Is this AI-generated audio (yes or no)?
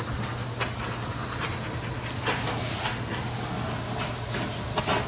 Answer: no